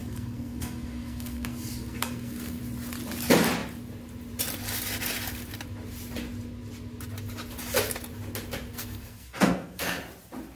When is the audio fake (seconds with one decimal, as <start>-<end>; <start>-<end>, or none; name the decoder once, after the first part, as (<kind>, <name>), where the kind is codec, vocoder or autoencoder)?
0.0-2.6 (codec, SNAC); 8.7-10.0